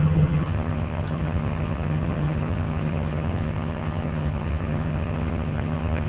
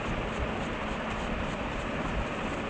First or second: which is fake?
first